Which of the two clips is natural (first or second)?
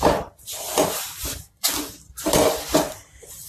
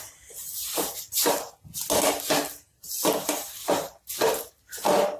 second